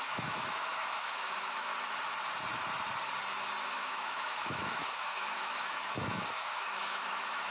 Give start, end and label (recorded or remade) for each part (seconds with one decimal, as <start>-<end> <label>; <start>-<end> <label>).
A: 0.0-1.7 remade; 1.7-3.6 recorded; 3.6-7.5 remade